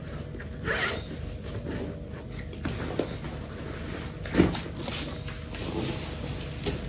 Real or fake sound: real